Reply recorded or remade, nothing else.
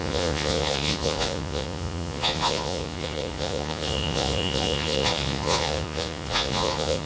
remade